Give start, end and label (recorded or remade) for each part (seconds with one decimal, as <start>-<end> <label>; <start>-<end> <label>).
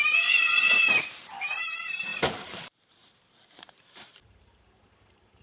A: 0.0-0.8 recorded; 0.8-5.4 remade